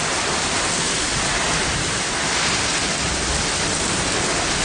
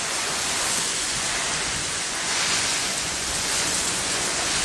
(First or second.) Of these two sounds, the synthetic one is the second